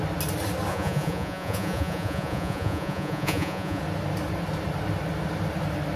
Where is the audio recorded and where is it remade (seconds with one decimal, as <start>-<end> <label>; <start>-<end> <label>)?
0.0-0.7 recorded; 0.7-3.8 remade; 3.8-6.0 recorded